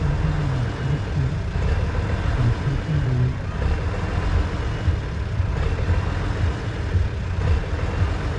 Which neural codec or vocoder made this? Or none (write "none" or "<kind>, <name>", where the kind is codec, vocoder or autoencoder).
none